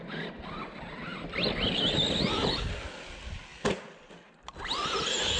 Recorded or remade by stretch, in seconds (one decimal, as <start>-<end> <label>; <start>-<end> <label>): 0.0-5.4 recorded